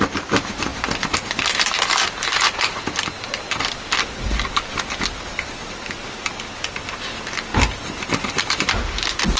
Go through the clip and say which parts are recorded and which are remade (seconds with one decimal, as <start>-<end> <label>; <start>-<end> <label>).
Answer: 0.0-9.4 recorded

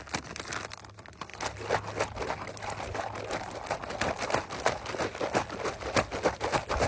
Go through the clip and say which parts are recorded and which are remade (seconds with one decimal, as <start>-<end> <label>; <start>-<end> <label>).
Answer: 0.0-6.9 recorded